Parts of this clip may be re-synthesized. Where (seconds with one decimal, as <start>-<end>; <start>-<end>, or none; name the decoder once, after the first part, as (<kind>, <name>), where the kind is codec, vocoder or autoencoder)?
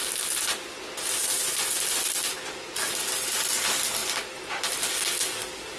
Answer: none